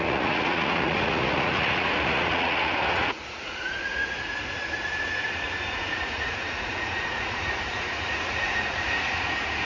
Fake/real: fake